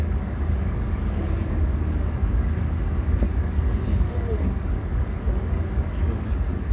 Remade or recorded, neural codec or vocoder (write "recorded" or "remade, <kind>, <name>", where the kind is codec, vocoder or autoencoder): remade, codec, DAC